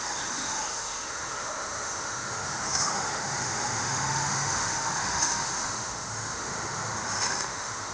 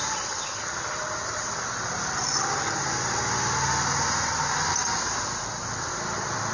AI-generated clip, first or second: first